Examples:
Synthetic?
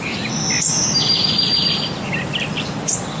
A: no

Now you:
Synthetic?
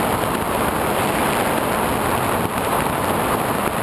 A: yes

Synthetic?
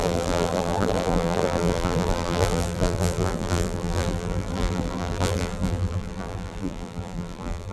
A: yes